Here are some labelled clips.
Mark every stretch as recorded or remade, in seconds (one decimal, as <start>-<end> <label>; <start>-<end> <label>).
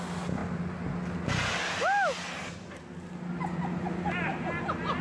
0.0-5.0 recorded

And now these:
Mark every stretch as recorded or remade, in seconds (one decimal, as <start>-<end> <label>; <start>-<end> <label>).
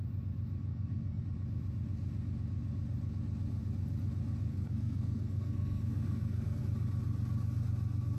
0.0-0.7 recorded; 0.7-1.2 remade; 1.2-4.5 recorded; 4.5-6.6 remade; 6.6-8.2 recorded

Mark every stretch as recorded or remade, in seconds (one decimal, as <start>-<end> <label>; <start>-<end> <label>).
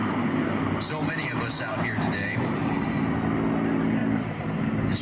0.0-3.0 remade; 3.0-4.0 recorded; 4.0-5.0 remade